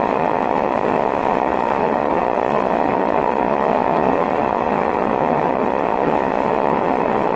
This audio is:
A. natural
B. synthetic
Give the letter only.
B